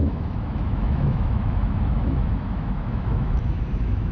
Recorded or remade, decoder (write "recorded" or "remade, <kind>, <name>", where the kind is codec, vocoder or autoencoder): remade, autoencoder, DAC-VAE